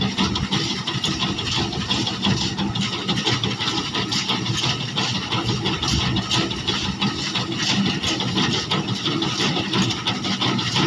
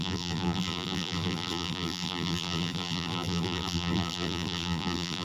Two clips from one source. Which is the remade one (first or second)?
second